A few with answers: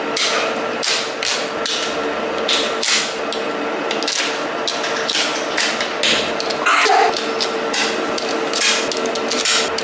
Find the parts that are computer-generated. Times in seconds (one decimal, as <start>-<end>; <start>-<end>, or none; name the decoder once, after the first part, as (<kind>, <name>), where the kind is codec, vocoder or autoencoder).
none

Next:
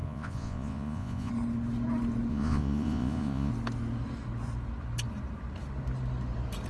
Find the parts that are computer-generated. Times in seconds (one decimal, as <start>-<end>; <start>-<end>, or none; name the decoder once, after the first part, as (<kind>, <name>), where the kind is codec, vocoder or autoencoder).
0.0-1.3 (vocoder, Vocos); 2.3-3.5

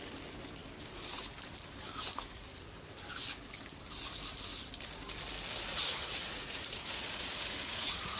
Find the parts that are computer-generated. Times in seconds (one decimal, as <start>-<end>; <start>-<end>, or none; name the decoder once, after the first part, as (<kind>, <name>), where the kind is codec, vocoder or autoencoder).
5.7-8.2 (vocoder, Vocos)

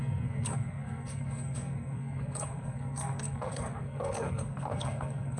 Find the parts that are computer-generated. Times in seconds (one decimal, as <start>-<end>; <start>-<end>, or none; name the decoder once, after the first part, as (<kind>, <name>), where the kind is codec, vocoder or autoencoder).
0.0-5.4 (codec, SNAC)

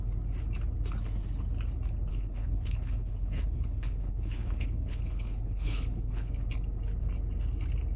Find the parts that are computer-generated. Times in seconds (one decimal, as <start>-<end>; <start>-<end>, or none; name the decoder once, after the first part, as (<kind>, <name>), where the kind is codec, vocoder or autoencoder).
2.1-6.3 (codec, HILCodec)